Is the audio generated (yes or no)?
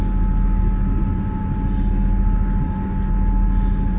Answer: no